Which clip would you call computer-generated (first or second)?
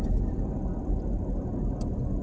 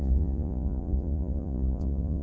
second